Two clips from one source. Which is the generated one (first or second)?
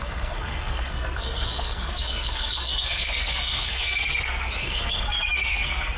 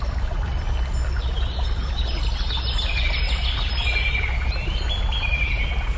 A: first